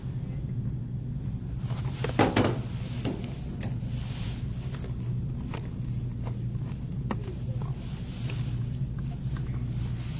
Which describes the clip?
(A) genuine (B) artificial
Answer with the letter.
A